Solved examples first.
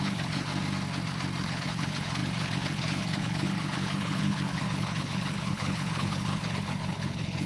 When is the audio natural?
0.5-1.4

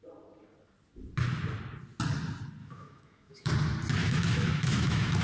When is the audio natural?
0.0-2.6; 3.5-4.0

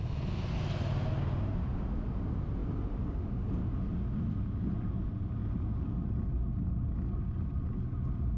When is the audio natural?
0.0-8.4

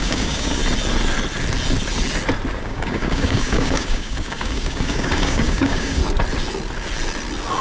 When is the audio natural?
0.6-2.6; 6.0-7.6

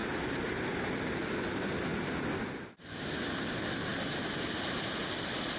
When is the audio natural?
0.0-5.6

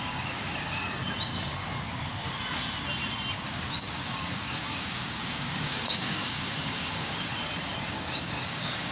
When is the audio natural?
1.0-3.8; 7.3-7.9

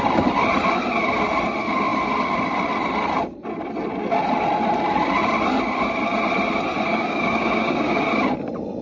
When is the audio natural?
0.0-6.9; 8.1-8.8

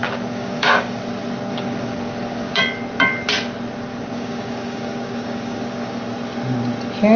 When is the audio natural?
1.0-1.5; 2.6-3.9; 6.0-7.2